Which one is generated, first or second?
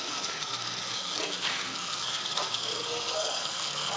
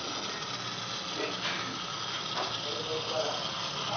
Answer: first